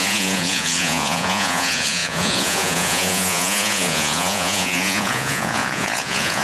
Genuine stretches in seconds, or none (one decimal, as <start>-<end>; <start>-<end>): none